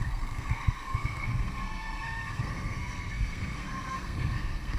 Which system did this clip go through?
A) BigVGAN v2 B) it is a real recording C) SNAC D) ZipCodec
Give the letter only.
C